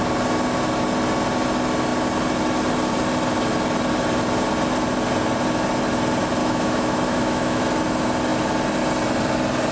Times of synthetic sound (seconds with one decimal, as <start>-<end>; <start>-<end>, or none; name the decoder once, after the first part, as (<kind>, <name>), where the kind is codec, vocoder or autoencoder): 6.4-7.6 (autoencoder, DAC-VAE)

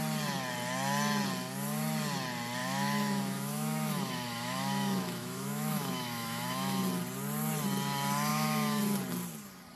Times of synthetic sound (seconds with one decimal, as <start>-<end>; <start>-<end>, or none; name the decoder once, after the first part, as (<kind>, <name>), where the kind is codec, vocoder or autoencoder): 2.6-6.8 (autoencoder, DAC-VAE); 8.3-8.8

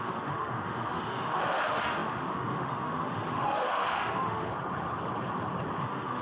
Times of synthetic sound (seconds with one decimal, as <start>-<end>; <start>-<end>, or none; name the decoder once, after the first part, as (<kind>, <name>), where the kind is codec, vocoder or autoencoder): 0.0-4.5 (autoencoder, DAC-VAE); 5.8-6.2

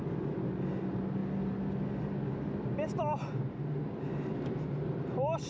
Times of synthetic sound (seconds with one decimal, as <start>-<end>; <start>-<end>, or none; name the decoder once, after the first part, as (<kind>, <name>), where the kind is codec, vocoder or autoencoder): none

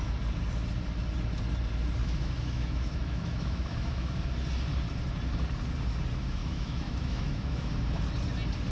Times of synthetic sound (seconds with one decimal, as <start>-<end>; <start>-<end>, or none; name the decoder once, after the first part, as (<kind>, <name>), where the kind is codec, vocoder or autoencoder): 2.0-4.2 (autoencoder, DAC-VAE); 6.4-7.7

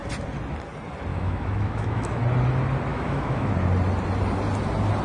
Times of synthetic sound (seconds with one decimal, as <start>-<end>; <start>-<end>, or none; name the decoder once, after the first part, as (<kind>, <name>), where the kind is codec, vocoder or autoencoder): 1.1-2.2 (autoencoder, DAC-VAE); 2.9-3.5

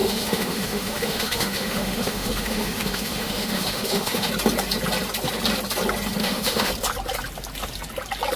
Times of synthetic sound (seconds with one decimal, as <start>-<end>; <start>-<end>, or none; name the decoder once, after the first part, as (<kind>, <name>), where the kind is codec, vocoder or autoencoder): 0.0-4.3 (autoencoder, DAC-VAE); 6.2-6.7